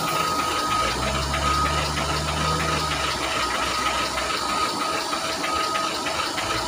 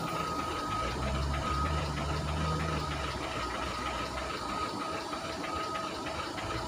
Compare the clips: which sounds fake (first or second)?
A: second